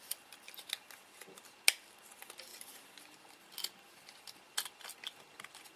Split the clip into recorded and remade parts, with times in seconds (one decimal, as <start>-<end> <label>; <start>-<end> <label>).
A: 0.0-5.8 recorded